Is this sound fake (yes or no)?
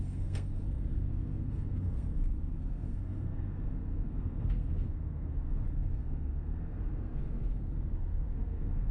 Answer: yes